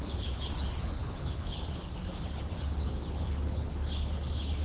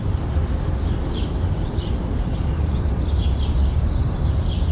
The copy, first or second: first